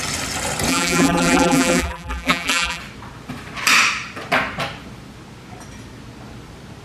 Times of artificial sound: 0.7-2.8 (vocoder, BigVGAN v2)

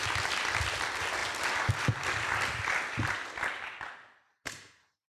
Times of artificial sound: none

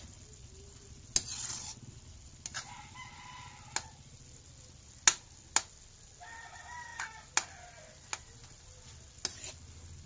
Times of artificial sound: none

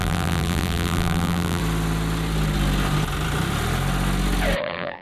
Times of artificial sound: 0.0-1.6 (vocoder, BigVGAN v2); 4.6-5.0

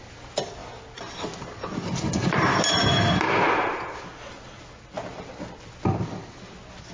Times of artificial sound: none

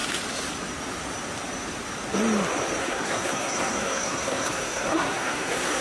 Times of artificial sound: 2.8-5.8 (codec, SNAC)

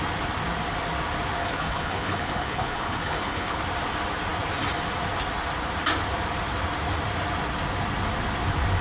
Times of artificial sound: 1.4-3.6 (codec, HILCodec)

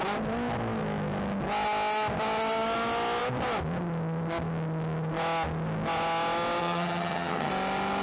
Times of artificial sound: 6.6-7.5 (vocoder, HiFi-GAN)